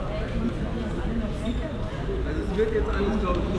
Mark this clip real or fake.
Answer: real